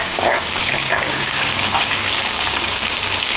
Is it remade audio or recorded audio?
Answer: remade